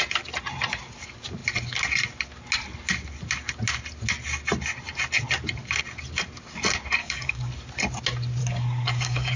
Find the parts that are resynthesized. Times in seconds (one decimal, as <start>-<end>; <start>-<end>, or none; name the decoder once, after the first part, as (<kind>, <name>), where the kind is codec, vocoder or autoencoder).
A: 7.0-7.5 (codec, DAC); 8.4-9.4